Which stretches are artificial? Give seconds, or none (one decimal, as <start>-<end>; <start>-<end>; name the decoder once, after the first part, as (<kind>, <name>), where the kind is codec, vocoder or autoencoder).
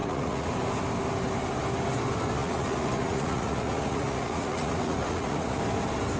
0.0-0.5 (vocoder, Vocos); 2.4-5.6